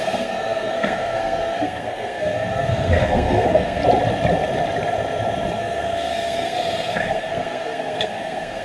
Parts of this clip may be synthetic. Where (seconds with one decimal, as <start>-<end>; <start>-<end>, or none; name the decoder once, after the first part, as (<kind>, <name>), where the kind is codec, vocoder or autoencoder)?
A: 0.0-3.8 (codec, SNAC); 5.6-8.6